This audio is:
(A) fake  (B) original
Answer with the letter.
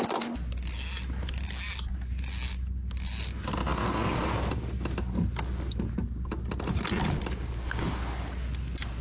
B